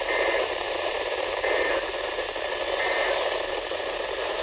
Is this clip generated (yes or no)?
yes